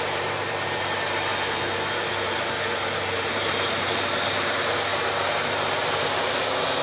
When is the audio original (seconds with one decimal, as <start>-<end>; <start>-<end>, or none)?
1.3-3.3; 4.9-6.8